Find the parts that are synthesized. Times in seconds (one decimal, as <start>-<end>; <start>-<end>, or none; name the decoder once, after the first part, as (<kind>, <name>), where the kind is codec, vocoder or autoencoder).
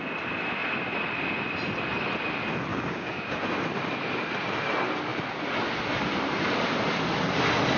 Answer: 2.7-3.4 (codec, DAC)